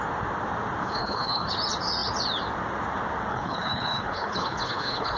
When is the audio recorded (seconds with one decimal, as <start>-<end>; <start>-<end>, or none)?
0.0-0.8; 1.5-3.3